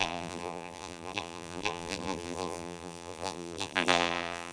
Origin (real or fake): fake